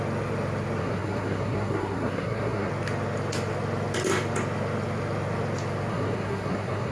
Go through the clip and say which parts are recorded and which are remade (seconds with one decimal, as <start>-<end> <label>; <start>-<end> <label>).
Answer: 0.0-0.8 recorded; 0.8-2.7 remade; 2.7-5.9 recorded; 5.9-6.9 remade